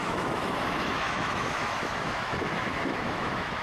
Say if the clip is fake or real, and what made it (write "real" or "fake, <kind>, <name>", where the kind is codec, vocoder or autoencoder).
fake, autoencoder, DAC-VAE